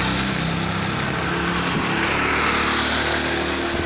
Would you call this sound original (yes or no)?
yes